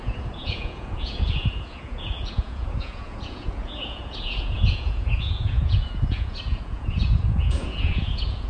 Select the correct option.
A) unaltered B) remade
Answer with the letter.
B